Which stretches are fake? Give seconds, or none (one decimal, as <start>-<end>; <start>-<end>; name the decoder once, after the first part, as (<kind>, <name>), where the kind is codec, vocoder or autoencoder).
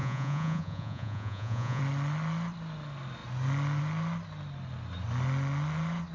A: 0.0-1.8 (vocoder, Vocos)